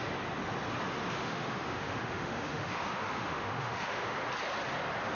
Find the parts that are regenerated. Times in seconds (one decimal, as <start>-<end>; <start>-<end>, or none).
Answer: 1.2-4.2